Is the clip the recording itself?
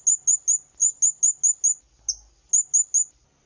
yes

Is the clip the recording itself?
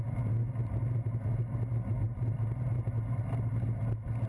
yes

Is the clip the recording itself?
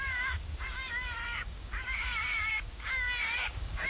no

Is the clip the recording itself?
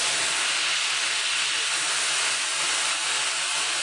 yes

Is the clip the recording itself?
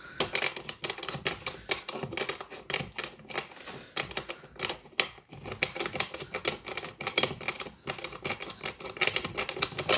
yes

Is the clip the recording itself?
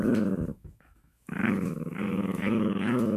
no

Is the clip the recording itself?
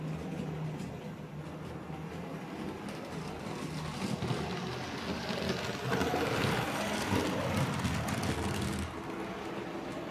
yes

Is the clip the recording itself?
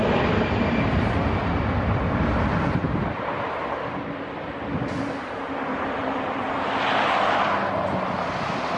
yes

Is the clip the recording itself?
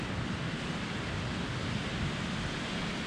yes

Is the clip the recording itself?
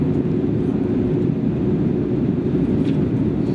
yes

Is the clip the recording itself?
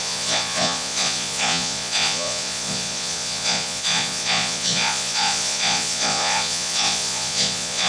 no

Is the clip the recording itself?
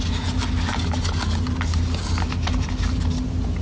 yes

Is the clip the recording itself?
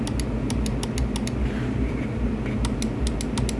yes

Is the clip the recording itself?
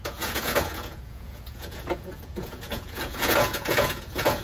no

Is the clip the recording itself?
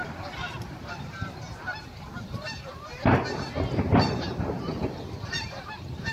no